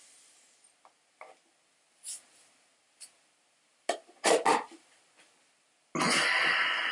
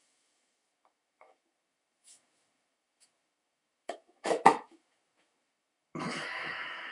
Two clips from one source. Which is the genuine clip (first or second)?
first